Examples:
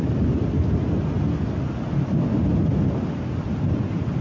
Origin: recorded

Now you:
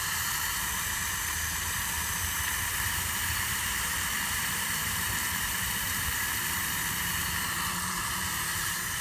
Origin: remade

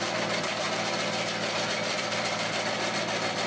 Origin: remade